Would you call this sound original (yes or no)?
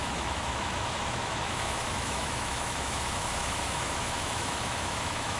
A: no